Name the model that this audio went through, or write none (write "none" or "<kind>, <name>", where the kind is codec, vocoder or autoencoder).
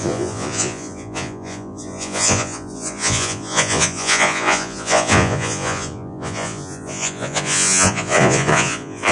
vocoder, Vocos